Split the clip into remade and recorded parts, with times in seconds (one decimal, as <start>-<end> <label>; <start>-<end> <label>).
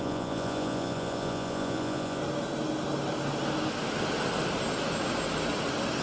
0.0-2.2 remade; 2.2-6.0 recorded